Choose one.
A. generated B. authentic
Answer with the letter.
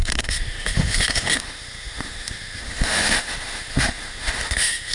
A